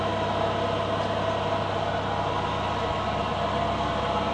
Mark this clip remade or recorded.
recorded